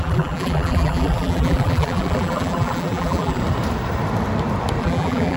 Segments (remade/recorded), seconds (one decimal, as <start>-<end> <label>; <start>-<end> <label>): 0.0-3.4 remade; 3.4-4.8 recorded; 4.8-5.4 remade